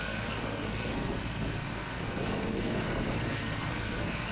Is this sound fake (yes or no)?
yes